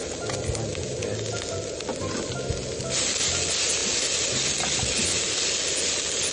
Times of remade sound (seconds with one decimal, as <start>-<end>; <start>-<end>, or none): none